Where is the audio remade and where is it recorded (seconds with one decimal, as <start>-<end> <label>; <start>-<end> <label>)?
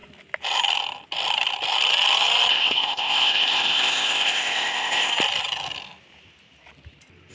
0.0-2.5 recorded; 2.5-5.1 remade; 5.1-7.3 recorded